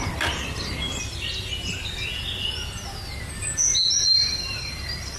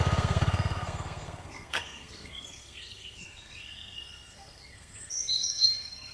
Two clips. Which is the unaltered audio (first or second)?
first